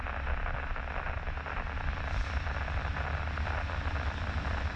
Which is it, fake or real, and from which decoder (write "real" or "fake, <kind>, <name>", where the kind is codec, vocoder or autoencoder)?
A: real